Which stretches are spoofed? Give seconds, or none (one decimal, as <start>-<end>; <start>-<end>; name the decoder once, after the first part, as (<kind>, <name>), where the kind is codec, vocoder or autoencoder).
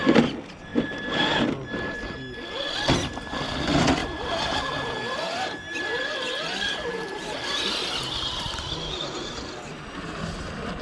4.0-7.9 (vocoder, BigVGAN v2)